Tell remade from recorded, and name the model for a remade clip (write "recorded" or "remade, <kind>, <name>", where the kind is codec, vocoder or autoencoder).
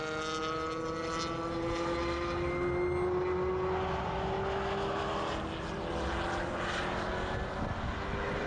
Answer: recorded